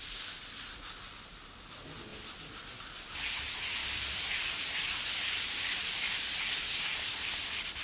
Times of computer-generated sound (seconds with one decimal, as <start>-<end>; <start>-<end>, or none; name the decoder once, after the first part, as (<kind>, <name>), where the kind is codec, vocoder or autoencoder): 2.1-3.3 (vocoder, BigVGAN v2); 3.8-7.3

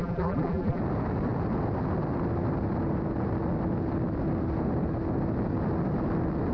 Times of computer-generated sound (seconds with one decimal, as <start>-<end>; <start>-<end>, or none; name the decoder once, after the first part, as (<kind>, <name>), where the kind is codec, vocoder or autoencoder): 0.0-0.8 (vocoder, BigVGAN v2)

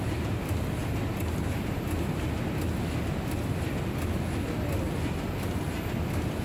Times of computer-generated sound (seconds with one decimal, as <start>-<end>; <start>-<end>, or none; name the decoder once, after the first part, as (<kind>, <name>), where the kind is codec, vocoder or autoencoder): none

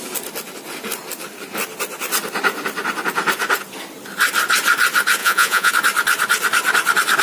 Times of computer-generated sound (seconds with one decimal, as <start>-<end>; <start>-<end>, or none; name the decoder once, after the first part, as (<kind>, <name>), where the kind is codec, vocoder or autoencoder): 5.2-5.7 (vocoder, Vocos)

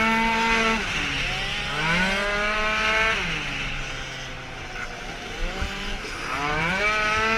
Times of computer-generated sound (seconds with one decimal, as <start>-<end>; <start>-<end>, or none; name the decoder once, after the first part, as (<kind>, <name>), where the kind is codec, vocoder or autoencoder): 5.4-6.8 (vocoder, BigVGAN v2)

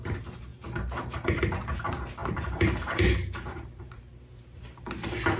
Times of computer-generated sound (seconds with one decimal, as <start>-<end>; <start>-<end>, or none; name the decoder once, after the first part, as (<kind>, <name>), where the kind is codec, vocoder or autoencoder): 0.5-1.4 (vocoder, BigVGAN v2); 2.2-5.4

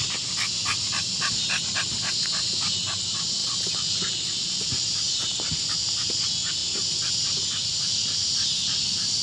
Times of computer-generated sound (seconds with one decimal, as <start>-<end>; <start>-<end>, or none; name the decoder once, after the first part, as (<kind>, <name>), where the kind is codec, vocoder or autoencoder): 3.4-4.5 (vocoder, BigVGAN v2)